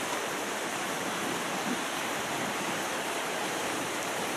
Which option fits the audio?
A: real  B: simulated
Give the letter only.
B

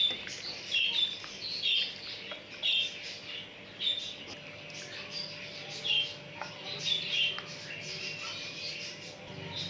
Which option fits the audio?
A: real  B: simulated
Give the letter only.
A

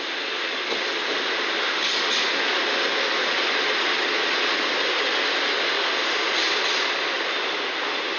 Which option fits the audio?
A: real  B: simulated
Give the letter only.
A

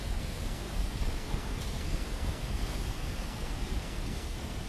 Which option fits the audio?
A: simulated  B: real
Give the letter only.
A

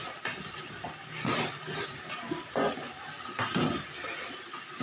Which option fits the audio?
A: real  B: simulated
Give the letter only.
A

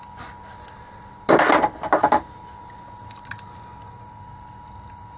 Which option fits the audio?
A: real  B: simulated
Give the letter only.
A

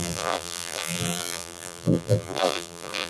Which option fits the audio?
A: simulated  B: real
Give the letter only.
A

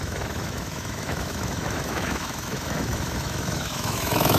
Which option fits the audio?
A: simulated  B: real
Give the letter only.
A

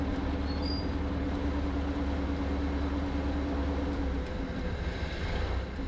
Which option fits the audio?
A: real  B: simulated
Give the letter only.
A